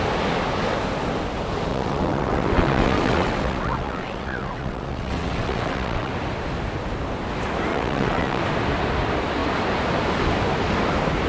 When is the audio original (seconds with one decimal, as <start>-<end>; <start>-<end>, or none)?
0.0-1.7; 6.1-7.7; 8.4-11.3